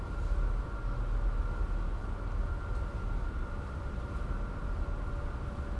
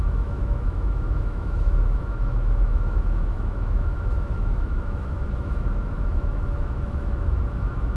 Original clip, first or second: first